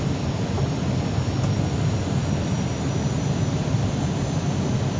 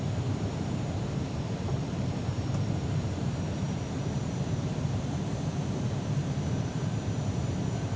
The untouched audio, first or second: first